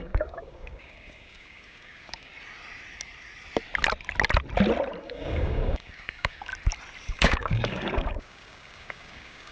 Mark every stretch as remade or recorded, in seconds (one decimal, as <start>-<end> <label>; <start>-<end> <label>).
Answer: 0.0-2.3 remade; 2.3-5.0 recorded; 5.0-6.5 remade; 6.5-7.1 recorded; 7.1-9.5 remade